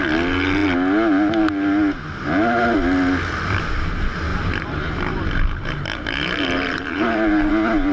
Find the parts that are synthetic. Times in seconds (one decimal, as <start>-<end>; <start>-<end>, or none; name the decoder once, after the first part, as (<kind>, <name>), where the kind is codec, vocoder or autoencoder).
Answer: 4.3-7.5 (vocoder, BigVGAN v2)